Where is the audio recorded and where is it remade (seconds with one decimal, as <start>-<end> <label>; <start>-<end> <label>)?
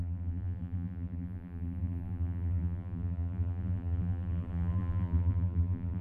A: 0.0-6.0 remade